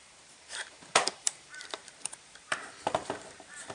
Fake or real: fake